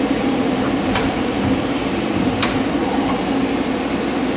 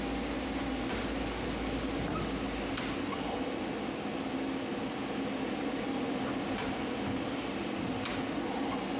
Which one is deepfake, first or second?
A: first